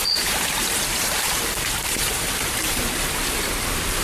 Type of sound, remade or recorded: remade